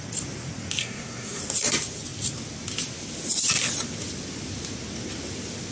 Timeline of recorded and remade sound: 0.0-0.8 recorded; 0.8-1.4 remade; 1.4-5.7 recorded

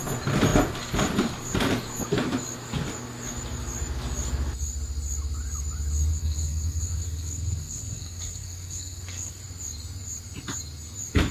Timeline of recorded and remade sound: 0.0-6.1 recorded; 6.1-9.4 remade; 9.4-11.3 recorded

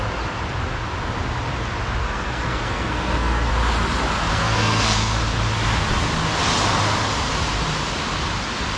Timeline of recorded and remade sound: 0.0-2.0 recorded; 2.0-3.5 remade; 3.5-4.3 recorded; 4.3-5.2 remade; 5.2-8.8 recorded

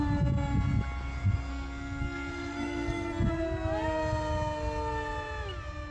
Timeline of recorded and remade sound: 0.0-1.5 recorded; 1.5-3.3 remade; 3.3-5.9 recorded

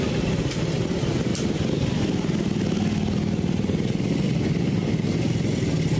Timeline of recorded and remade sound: 0.0-6.0 recorded

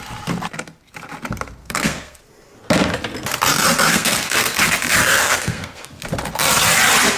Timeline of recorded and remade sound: 0.0-1.6 recorded; 1.6-2.2 remade; 2.2-3.9 recorded; 3.9-4.6 remade; 4.6-5.1 recorded; 5.1-6.0 remade; 6.0-7.2 recorded